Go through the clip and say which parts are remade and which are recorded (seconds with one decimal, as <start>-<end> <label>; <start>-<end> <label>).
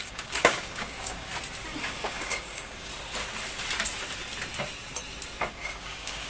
0.0-1.3 remade; 1.3-1.8 recorded; 1.8-2.9 remade; 2.9-5.5 recorded; 5.5-6.3 remade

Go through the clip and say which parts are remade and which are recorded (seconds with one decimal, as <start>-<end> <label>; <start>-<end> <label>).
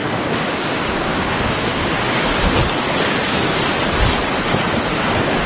0.0-2.6 remade; 2.6-5.0 recorded; 5.0-5.5 remade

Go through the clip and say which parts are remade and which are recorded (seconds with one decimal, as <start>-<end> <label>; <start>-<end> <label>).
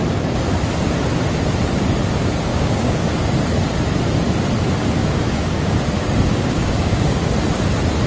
0.0-2.5 recorded; 2.5-3.1 remade; 3.1-5.0 recorded; 5.0-5.8 remade; 5.8-6.3 recorded; 6.3-7.3 remade; 7.3-8.1 recorded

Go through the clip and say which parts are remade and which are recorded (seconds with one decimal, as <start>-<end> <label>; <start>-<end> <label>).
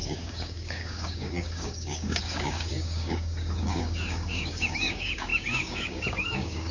0.0-6.7 remade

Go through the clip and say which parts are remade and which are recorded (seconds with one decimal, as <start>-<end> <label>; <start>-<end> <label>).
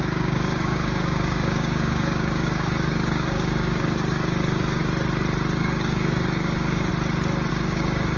0.0-4.8 remade; 4.8-5.6 recorded; 5.6-6.9 remade; 6.9-7.5 recorded; 7.5-8.2 remade